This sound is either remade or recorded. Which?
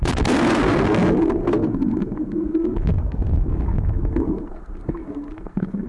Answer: remade